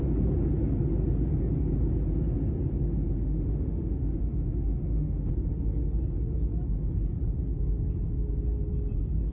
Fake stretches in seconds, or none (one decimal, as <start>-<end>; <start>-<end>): 3.2-5.3